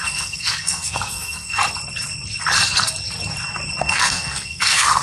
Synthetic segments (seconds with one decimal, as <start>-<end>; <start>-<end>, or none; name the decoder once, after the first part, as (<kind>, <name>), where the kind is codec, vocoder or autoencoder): 0.0-1.6 (codec, SNAC); 3.8-5.0